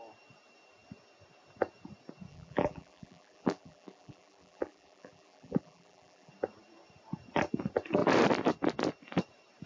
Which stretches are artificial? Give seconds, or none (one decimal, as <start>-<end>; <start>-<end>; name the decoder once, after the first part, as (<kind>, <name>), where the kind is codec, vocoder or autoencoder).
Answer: 2.3-6.3 (vocoder, BigVGAN v2)